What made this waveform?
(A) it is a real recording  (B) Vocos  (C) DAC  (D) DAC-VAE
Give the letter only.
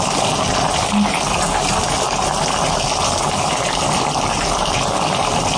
A